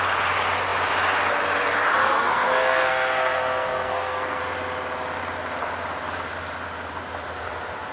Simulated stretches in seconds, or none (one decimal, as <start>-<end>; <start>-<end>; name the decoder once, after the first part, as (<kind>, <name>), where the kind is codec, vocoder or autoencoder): 2.0-4.4 (codec, SNAC)